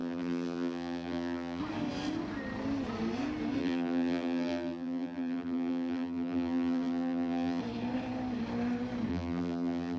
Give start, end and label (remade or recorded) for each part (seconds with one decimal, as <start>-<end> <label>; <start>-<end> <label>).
0.0-1.6 remade; 1.6-3.6 recorded; 3.6-7.6 remade; 7.6-9.1 recorded; 9.1-10.0 remade